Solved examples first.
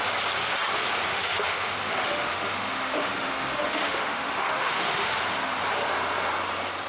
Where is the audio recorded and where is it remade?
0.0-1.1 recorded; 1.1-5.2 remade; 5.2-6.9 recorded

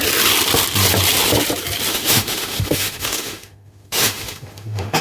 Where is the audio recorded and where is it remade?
0.0-1.9 recorded; 1.9-5.0 remade

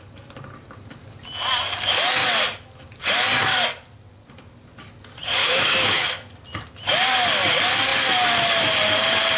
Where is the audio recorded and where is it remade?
0.0-5.4 recorded; 5.4-6.3 remade; 6.3-9.4 recorded